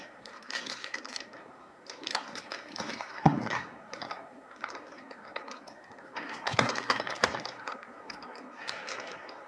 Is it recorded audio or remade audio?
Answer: remade